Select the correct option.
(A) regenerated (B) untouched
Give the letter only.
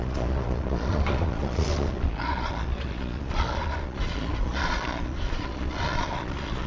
A